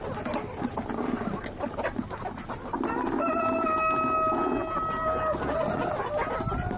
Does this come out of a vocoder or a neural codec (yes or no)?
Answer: no